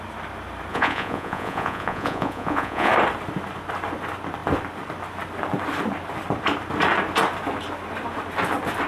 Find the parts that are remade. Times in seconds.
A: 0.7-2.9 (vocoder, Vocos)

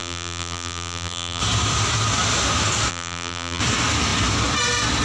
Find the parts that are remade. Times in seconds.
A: 0.0-1.4 (vocoder, BigVGAN v2); 2.9-3.6

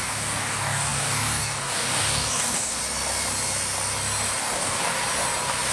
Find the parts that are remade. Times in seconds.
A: 0.0-2.8 (codec, DAC); 4.4-4.9

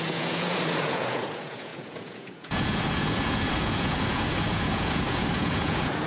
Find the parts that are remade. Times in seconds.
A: 0.0-6.1 (vocoder, Vocos)